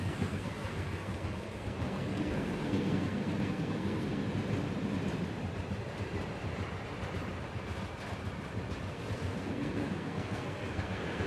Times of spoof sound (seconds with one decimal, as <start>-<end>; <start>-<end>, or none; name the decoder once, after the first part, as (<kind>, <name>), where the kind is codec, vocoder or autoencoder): 0.0-4.2 (codec, SNAC); 8.9-11.3